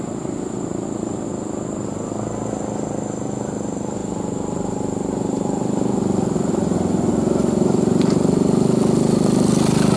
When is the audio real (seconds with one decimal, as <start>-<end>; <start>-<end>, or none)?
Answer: 0.0-10.0